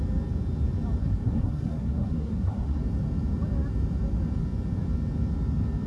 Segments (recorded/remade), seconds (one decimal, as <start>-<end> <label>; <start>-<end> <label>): 0.0-1.0 recorded; 1.0-2.8 remade; 2.8-5.9 recorded